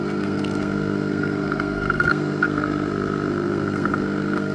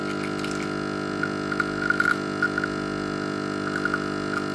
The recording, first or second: second